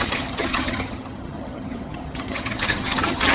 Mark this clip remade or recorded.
remade